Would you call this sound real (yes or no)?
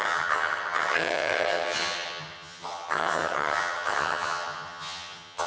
no